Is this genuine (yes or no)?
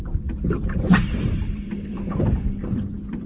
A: no